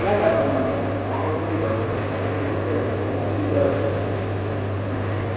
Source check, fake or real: real